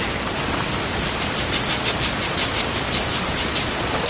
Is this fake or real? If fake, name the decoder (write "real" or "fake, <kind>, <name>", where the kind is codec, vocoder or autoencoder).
real